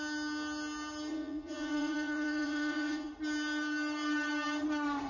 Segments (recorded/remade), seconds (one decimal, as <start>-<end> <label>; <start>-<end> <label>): 0.0-1.1 recorded; 1.1-3.1 remade; 3.1-5.1 recorded